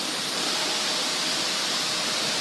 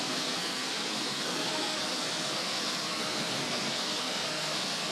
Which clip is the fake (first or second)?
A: second